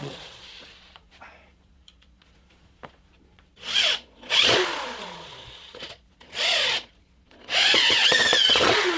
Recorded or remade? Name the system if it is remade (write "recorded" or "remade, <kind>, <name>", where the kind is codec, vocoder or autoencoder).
remade, vocoder, Vocos